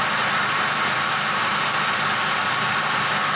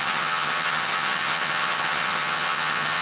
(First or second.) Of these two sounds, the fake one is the second